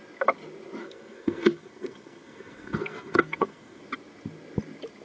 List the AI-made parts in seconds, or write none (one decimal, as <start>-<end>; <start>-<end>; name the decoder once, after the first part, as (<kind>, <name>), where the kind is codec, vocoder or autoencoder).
0.8-3.8 (codec, SNAC)